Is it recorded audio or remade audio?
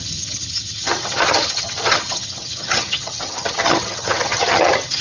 remade